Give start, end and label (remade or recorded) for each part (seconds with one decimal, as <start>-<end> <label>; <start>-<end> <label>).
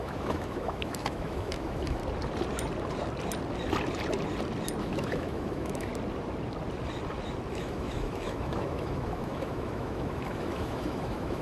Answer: 0.0-2.0 remade; 2.0-4.8 recorded; 4.8-5.9 remade; 5.9-7.5 recorded; 7.5-11.4 remade